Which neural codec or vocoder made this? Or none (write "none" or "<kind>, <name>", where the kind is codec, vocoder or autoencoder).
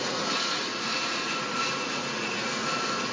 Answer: vocoder, Vocos